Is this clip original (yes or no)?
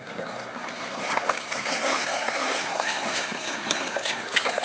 no